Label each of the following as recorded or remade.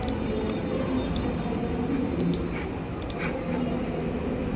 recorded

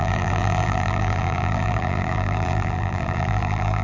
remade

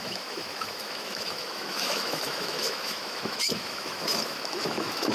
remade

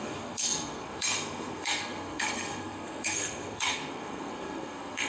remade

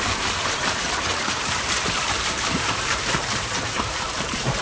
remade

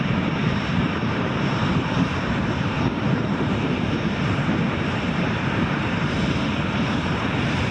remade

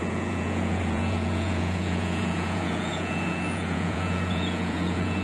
remade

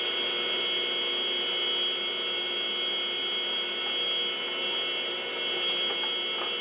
recorded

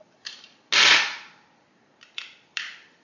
recorded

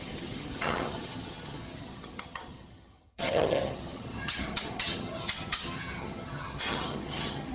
remade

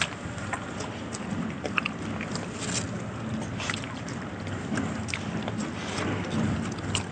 recorded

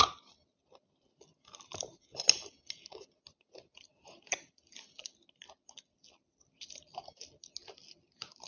recorded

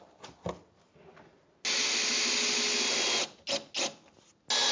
recorded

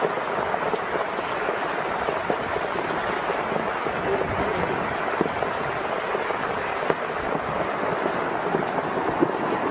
recorded